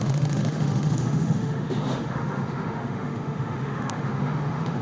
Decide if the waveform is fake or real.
fake